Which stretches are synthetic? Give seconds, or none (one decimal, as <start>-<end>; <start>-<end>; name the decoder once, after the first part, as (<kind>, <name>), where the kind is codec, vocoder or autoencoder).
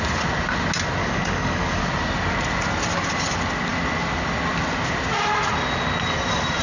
1.0-1.8 (codec, DAC)